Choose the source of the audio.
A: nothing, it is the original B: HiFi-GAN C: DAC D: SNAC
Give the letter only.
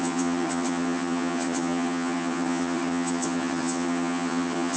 B